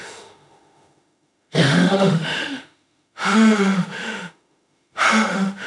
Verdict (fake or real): fake